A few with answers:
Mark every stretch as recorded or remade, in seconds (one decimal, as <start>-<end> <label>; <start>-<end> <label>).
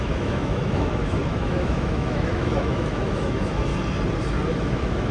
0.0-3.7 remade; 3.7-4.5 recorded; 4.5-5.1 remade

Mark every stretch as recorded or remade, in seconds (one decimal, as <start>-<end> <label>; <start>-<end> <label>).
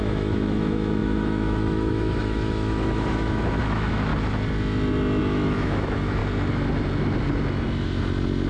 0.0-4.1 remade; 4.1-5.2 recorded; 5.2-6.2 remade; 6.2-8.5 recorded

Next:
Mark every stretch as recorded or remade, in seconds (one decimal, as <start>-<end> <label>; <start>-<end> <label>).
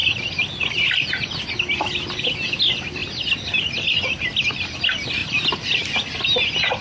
0.0-6.8 recorded